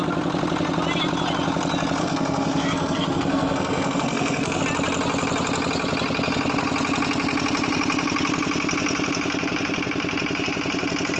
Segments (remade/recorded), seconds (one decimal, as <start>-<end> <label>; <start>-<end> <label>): 0.0-2.0 recorded; 2.0-4.6 remade; 4.6-11.2 recorded